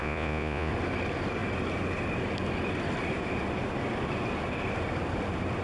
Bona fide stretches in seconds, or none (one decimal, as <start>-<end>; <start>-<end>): 0.7-5.6